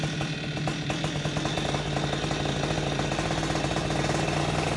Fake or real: real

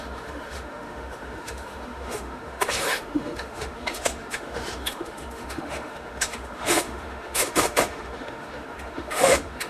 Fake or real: fake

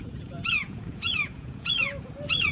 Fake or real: fake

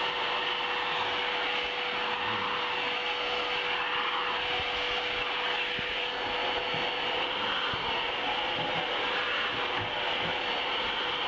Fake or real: real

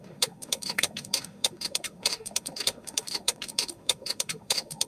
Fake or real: fake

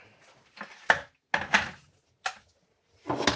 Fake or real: real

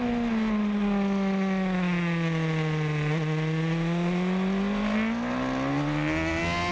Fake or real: real